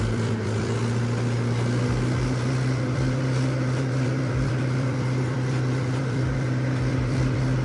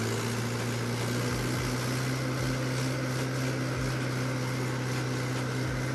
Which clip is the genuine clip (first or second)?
second